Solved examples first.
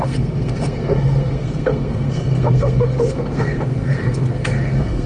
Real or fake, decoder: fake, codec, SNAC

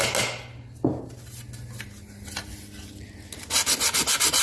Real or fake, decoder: real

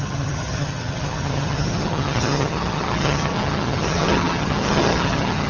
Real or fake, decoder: fake, vocoder, HiFi-GAN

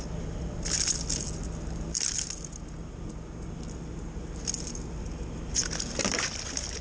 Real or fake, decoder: real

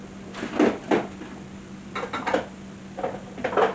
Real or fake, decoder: real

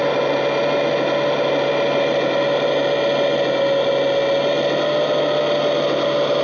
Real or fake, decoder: real